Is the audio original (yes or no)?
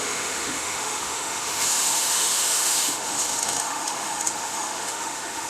no